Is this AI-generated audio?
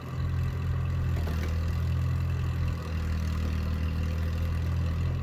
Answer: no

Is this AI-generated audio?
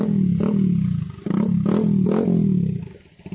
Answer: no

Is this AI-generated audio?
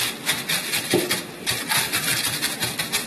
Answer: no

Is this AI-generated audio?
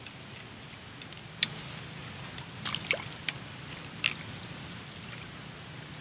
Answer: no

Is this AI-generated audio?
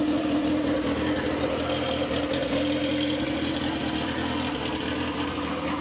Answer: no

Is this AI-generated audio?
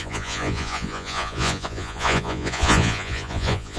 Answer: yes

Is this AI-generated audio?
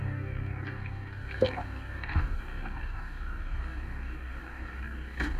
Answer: yes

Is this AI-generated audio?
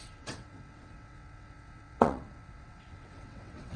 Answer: yes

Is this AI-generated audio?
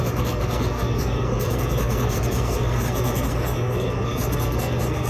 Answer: yes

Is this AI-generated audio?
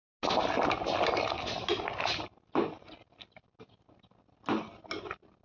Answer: no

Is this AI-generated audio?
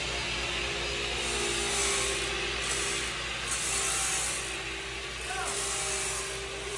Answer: no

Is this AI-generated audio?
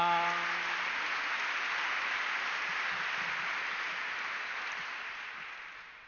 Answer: no